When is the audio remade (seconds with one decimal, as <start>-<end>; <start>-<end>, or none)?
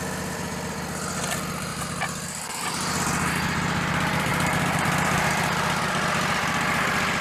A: 1.7-3.3; 4.3-5.8